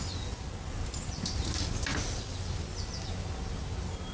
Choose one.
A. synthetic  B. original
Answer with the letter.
B